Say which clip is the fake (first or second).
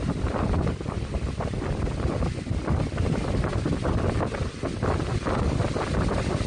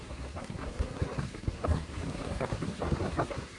second